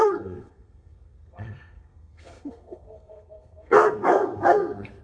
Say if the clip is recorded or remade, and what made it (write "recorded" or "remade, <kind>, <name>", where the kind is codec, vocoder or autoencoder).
remade, codec, SNAC